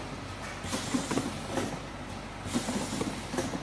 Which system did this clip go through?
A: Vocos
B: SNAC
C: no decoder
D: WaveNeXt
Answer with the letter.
C